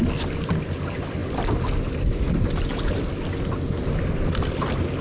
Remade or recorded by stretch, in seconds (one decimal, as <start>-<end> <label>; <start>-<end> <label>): 0.0-5.0 recorded